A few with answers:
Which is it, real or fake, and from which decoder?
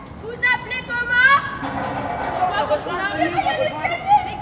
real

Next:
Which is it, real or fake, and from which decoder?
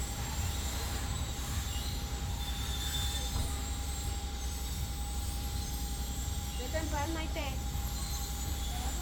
fake, vocoder, BigVGAN v2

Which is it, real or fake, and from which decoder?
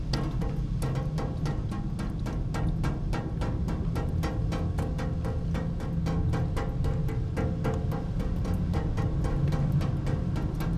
real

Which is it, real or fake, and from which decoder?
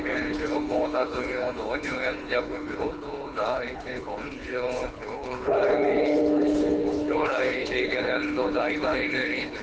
fake, codec, HILCodec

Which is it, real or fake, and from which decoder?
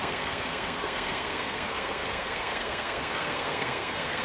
fake, codec, SNAC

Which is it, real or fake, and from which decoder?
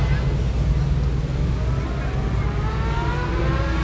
real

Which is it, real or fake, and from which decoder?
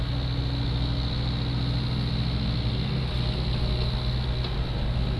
real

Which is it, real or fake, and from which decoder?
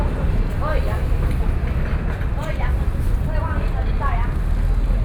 real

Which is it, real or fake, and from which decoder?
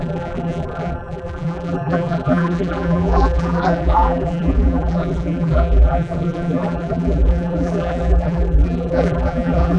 fake, vocoder, BigVGAN v2